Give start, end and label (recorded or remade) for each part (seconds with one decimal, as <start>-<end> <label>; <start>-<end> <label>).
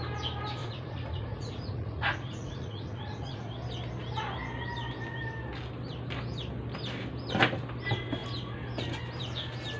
0.0-0.6 recorded; 0.6-3.5 remade; 3.5-9.8 recorded